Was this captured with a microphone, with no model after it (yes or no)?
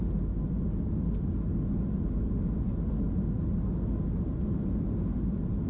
yes